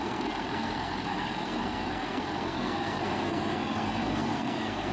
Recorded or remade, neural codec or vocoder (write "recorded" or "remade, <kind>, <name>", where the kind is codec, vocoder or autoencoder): remade, codec, SNAC